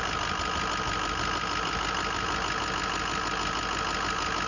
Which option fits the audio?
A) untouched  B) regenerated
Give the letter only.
A